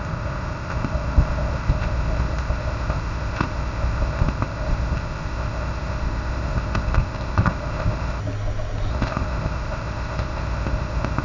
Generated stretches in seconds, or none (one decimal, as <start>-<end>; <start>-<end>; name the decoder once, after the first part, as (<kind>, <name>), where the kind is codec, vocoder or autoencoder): 0.0-8.2 (codec, ZipCodec); 8.9-11.2

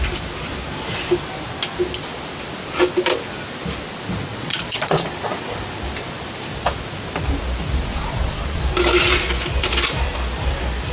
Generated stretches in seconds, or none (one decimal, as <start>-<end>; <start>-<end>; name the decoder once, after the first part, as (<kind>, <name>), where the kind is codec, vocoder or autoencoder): 4.3-5.1 (vocoder, Vocos); 7.9-8.6